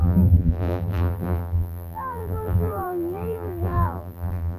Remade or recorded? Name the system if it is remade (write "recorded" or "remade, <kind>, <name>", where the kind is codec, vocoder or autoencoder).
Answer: remade, vocoder, BigVGAN v2